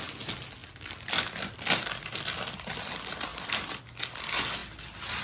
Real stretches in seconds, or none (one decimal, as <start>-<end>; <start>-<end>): 0.0-5.2